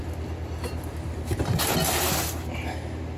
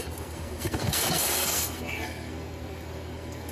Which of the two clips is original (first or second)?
first